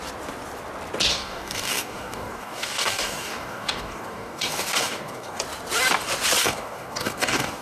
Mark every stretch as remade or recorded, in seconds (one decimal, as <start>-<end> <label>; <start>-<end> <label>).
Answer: 0.0-1.1 recorded; 1.1-5.4 remade; 5.4-6.4 recorded; 6.4-7.6 remade